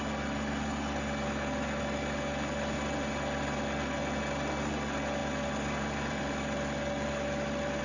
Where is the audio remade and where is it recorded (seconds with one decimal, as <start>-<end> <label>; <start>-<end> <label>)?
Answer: 0.0-5.2 recorded; 5.2-7.8 remade